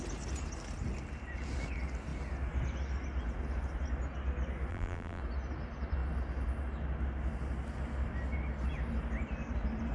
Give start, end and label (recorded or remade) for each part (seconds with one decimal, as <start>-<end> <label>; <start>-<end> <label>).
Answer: 0.0-4.7 recorded; 4.7-5.2 remade; 5.2-9.9 recorded